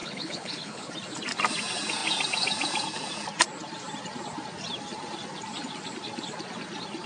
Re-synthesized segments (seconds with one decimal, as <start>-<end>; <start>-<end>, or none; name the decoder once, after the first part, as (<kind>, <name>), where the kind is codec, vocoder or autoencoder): 0.0-0.9 (codec, HILCodec)